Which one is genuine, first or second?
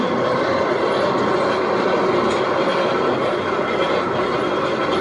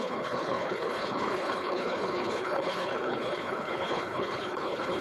first